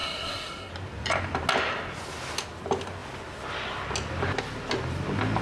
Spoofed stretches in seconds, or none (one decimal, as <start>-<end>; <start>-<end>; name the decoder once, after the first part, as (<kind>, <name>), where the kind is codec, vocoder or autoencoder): 0.0-0.7 (codec, SNAC)